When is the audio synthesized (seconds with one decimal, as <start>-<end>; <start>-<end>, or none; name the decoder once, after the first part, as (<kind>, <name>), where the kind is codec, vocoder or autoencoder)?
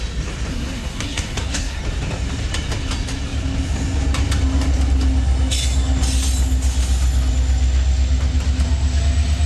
0.5-1.8 (codec, SNAC)